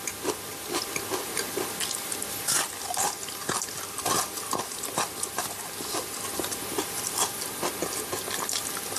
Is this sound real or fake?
real